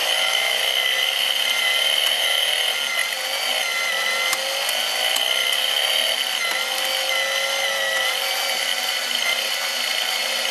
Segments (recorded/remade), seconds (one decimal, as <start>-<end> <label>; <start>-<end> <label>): 0.0-0.6 remade; 0.6-10.5 recorded